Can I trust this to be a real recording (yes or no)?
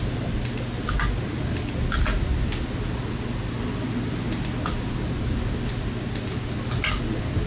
yes